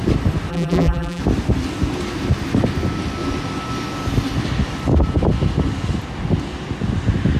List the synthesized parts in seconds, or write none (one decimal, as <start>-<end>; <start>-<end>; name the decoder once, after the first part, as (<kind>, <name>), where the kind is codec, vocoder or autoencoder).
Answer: 0.5-1.2 (vocoder, BigVGAN v2)